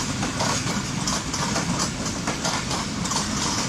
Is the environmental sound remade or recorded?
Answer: recorded